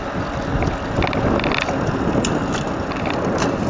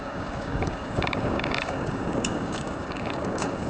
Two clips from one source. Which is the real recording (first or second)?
first